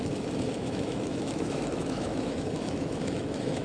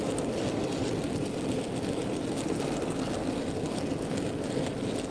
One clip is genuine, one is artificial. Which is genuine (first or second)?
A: second